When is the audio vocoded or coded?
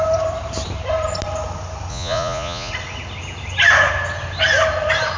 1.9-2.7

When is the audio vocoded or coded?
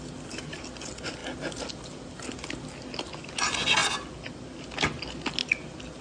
none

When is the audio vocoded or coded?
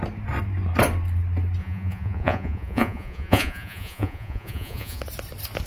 1.6-5.0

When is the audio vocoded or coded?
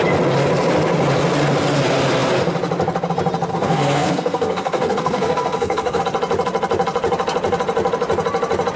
3.5-6.0